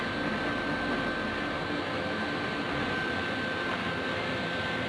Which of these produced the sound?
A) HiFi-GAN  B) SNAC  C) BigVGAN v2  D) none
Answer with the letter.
D